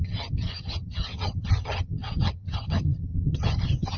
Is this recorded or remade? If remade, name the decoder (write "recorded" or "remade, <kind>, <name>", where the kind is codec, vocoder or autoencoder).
remade, vocoder, HiFi-GAN